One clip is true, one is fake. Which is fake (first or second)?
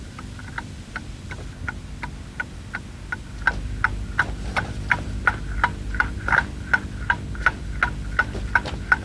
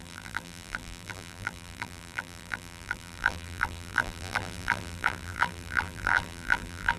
second